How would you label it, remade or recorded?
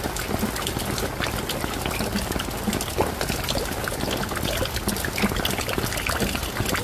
recorded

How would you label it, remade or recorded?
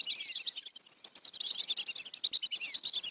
recorded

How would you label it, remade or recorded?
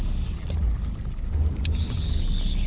recorded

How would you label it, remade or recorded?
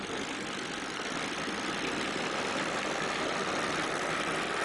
recorded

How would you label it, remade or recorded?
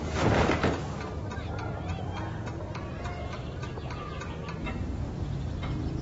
recorded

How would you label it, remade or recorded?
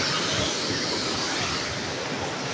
recorded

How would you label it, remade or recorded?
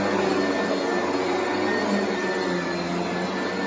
recorded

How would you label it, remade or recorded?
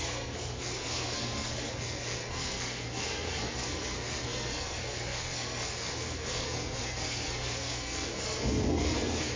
remade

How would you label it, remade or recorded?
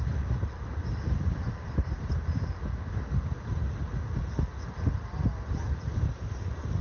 recorded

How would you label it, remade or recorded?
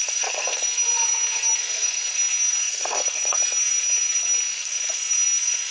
remade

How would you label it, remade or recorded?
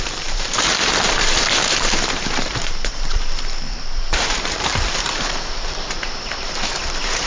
remade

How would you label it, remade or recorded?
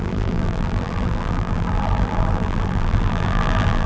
remade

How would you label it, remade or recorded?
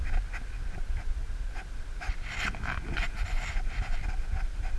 recorded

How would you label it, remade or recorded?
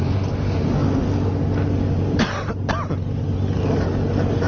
recorded